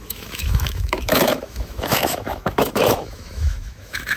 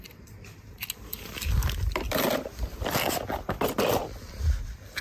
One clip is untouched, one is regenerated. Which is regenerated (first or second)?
first